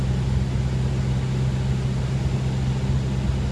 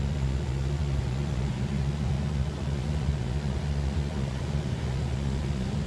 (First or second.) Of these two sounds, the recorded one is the first